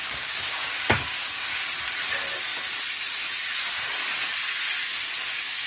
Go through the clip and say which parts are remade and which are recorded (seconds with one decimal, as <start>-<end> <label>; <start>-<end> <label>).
0.0-1.6 remade; 1.6-5.7 recorded